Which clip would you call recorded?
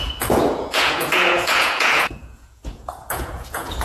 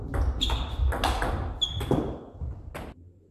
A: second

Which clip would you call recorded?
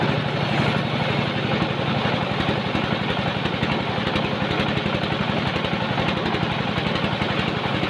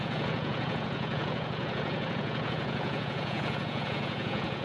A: first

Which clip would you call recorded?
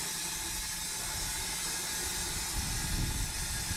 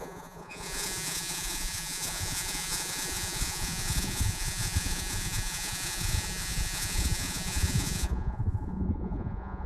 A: first